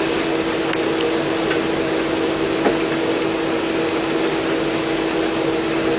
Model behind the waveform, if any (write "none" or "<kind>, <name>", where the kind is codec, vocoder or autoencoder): none